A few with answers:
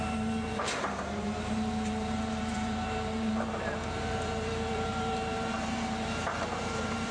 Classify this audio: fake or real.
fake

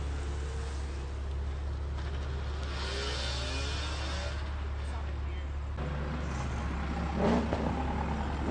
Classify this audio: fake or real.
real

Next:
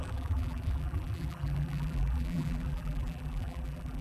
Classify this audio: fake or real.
fake